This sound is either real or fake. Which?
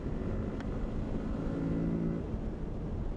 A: real